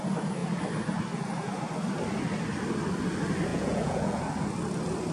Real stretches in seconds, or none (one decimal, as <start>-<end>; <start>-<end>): 0.0-3.5; 4.2-5.1